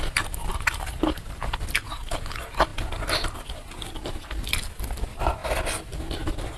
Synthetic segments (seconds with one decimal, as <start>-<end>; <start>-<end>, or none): 0.5-1.5